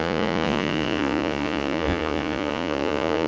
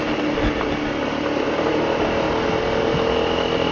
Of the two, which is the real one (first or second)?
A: second